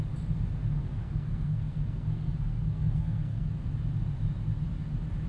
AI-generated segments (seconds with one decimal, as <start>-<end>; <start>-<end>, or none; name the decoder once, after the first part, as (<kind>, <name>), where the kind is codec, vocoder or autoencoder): 0.8-3.7 (codec, SNAC)